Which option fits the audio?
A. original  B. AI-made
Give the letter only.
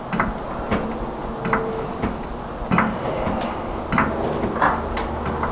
A